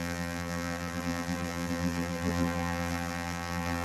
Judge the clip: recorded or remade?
remade